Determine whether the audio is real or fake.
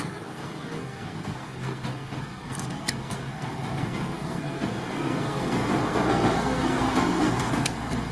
fake